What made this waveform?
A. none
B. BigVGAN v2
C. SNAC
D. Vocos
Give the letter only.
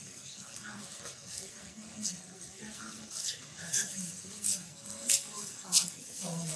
C